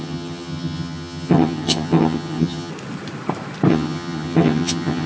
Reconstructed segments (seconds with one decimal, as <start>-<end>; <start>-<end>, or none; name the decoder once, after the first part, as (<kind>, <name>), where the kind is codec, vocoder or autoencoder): 0.0-2.7 (vocoder, HiFi-GAN); 3.7-5.1